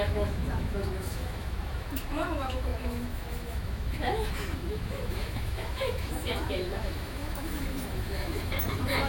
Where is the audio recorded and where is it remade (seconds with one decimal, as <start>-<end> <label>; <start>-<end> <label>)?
0.0-9.1 remade